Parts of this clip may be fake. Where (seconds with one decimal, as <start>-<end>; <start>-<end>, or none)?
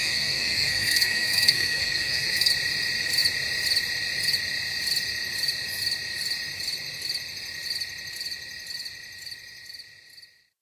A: 0.0-2.5